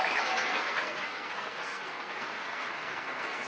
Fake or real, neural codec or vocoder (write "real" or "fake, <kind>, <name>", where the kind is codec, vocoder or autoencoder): fake, codec, SNAC